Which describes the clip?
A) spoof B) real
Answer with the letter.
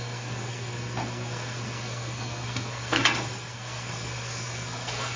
A